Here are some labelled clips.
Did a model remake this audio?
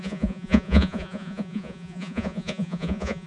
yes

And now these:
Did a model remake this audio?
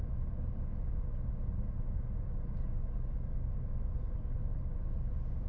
no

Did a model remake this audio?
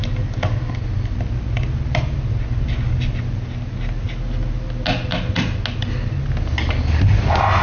no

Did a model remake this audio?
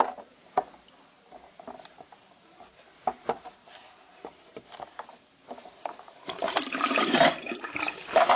yes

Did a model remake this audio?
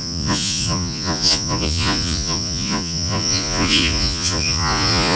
yes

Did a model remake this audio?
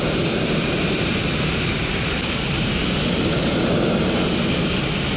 no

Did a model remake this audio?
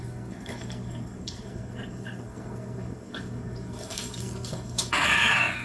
yes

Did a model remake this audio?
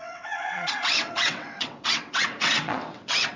yes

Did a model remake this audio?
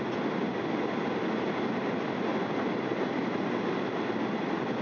no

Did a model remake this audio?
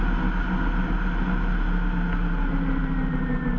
no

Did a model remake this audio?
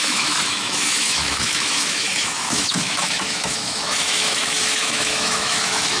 yes